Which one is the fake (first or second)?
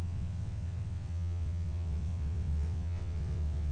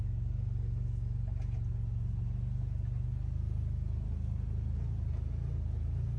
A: first